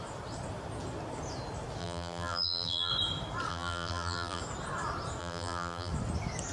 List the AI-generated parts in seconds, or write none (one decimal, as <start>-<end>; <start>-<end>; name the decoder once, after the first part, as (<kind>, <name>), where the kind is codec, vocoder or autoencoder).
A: 1.8-2.9 (vocoder, BigVGAN v2); 3.5-4.4; 5.2-5.9